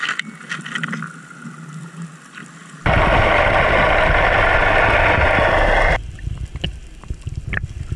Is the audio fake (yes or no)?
no